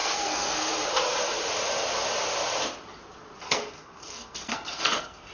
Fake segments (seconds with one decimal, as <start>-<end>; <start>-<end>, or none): 0.0-0.7; 3.4-5.3